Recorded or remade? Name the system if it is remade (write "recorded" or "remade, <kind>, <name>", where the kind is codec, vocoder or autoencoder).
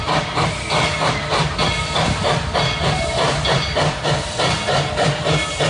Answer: recorded